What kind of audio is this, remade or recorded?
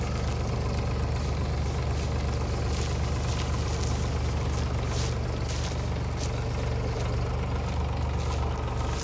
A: recorded